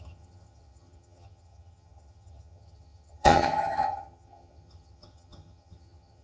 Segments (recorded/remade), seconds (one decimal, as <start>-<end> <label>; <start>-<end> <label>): 0.0-6.2 remade